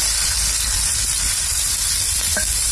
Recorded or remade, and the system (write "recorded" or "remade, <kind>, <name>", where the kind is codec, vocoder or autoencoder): remade, vocoder, BigVGAN v2